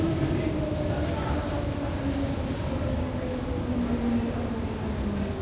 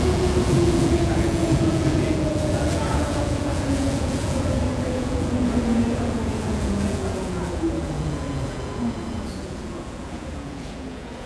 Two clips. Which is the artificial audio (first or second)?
second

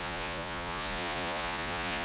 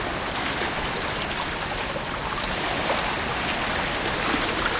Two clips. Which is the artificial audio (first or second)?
first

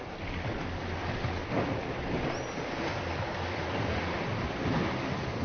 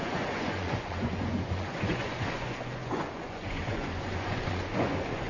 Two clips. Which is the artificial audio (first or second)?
second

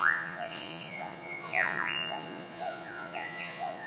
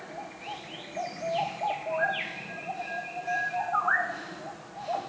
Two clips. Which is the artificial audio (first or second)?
first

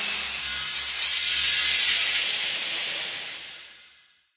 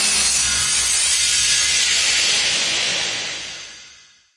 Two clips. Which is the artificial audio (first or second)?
second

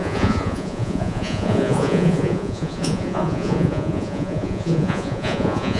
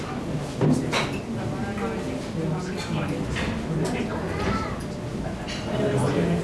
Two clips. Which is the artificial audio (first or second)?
first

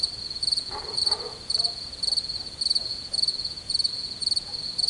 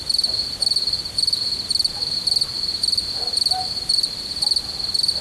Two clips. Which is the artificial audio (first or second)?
first